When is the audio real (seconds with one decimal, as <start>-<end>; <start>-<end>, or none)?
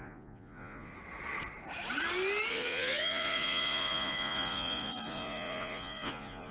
0.9-2.5